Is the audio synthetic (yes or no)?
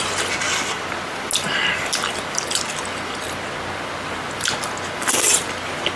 no